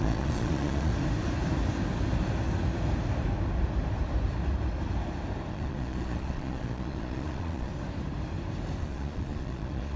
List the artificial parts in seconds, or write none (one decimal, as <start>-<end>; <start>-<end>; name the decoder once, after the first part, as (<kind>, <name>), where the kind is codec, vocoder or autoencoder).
0.0-0.9 (vocoder, Vocos); 5.5-7.7; 8.8-10.0